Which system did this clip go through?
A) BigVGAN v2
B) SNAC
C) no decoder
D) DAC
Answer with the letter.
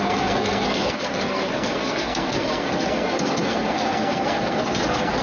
B